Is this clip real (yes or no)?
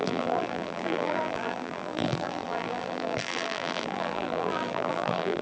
no